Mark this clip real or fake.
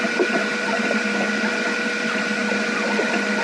fake